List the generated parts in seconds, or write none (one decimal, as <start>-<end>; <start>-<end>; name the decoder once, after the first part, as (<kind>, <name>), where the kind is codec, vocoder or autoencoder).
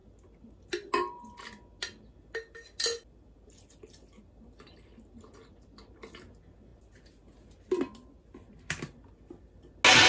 none